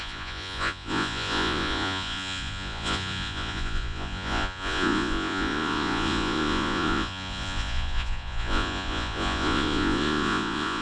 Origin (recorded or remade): remade